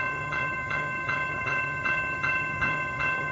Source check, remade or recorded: remade